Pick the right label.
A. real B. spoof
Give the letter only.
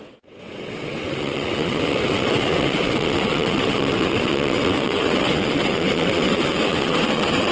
B